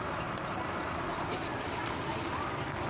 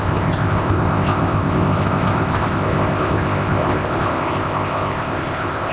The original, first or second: first